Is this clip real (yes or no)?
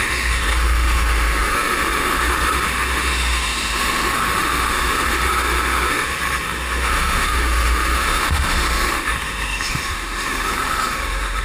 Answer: no